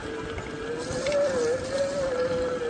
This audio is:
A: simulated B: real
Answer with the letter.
B